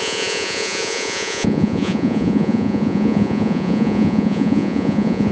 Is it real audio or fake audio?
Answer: fake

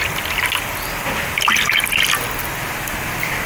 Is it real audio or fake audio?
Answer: real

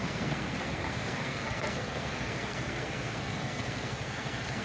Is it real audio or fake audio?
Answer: fake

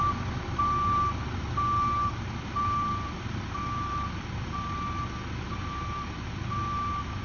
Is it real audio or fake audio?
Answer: real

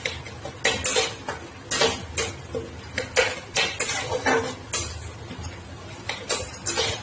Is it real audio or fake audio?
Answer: real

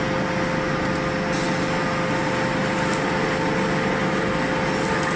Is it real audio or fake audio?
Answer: real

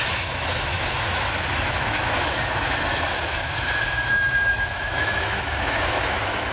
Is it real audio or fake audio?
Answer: fake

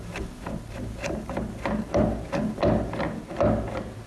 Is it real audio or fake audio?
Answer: real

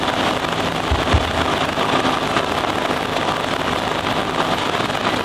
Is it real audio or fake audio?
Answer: real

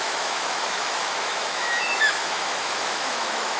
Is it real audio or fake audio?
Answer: fake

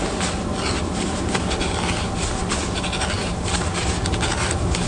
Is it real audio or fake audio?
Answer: real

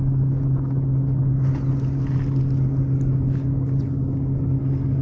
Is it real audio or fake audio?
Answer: real